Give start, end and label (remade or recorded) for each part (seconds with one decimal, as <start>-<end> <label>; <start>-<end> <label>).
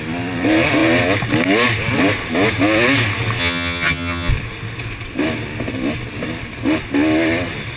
0.0-3.4 recorded; 3.4-4.3 remade; 4.3-7.8 recorded